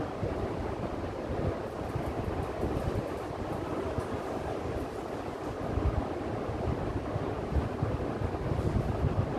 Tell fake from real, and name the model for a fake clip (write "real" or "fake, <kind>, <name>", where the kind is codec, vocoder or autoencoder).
real